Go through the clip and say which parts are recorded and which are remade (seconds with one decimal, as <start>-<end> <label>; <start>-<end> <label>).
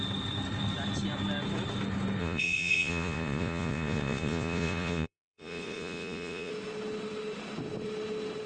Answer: 0.0-2.2 recorded; 2.2-6.5 remade; 6.5-8.5 recorded